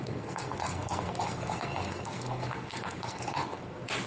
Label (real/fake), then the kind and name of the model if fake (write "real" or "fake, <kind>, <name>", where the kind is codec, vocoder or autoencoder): fake, codec, SNAC